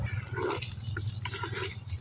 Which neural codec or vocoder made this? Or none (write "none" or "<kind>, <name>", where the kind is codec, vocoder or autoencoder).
none